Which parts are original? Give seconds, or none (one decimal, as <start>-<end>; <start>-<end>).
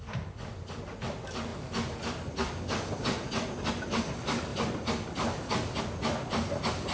0.0-6.9